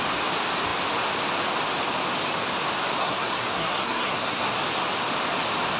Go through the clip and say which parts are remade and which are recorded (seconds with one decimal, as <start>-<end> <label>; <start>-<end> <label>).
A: 0.0-3.0 recorded; 3.0-4.6 remade; 4.6-5.8 recorded